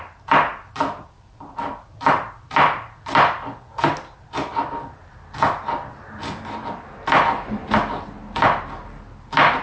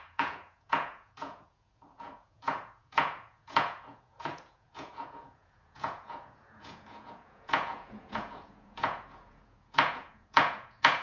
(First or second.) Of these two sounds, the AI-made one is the second